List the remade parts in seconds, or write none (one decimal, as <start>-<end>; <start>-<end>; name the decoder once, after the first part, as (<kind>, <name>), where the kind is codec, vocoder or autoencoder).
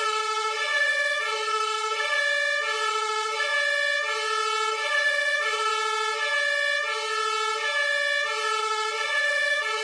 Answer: 0.0-2.2 (vocoder, Vocos); 2.9-3.5; 4.7-5.7; 8.6-9.8